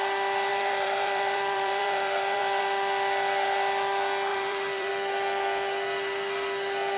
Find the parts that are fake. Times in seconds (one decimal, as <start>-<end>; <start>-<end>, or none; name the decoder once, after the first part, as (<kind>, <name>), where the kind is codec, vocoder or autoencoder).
0.5-2.6 (vocoder, BigVGAN v2); 4.3-4.9

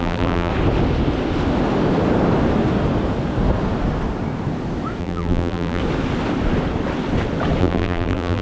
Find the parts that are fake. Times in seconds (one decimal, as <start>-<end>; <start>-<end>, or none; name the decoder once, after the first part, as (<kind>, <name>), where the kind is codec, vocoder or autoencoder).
0.0-0.5 (vocoder, BigVGAN v2); 5.0-5.8; 7.6-8.4